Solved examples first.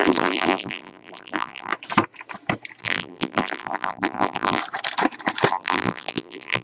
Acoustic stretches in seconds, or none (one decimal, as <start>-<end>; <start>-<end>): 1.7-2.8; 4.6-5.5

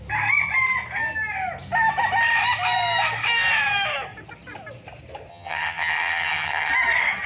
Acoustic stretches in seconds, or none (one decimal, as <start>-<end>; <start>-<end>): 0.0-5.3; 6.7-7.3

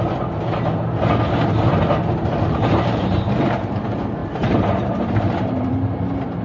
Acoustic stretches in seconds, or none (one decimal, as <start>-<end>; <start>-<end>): 0.0-1.7; 3.8-4.2; 5.7-6.4